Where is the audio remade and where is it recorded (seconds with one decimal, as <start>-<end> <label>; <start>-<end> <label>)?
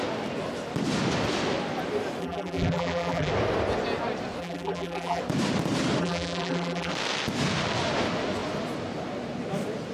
0.0-2.2 recorded; 2.2-3.3 remade; 3.3-4.4 recorded; 4.4-5.2 remade; 5.2-6.0 recorded; 6.0-6.9 remade; 6.9-9.9 recorded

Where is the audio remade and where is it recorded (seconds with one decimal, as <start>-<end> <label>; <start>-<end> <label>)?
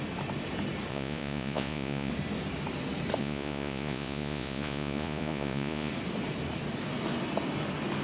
0.0-0.9 recorded; 0.9-2.1 remade; 2.1-3.2 recorded; 3.2-5.9 remade; 5.9-8.0 recorded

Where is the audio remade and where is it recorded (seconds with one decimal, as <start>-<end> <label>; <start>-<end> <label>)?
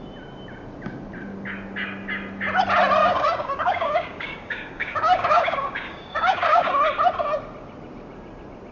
0.0-3.0 recorded; 3.0-6.7 remade; 6.7-8.7 recorded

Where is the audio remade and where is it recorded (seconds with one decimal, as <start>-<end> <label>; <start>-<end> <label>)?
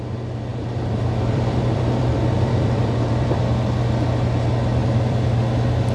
0.0-0.5 recorded; 0.5-3.4 remade; 3.4-4.8 recorded; 4.8-5.4 remade; 5.4-5.9 recorded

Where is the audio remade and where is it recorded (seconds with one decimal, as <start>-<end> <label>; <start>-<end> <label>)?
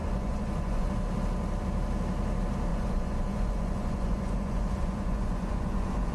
0.0-0.9 remade; 0.9-2.7 recorded; 2.7-6.1 remade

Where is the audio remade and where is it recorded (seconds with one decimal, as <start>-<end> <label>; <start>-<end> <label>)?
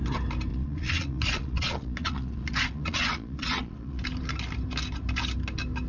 0.0-0.5 recorded; 0.5-4.0 remade; 4.0-5.9 recorded